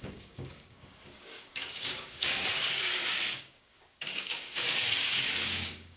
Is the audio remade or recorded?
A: remade